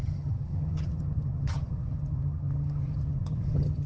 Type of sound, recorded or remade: remade